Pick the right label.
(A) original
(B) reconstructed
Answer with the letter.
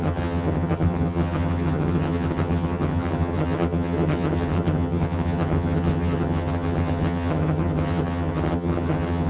B